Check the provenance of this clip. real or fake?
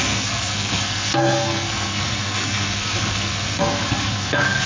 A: fake